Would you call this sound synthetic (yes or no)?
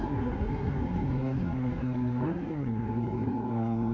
yes